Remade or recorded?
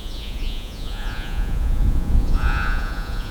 remade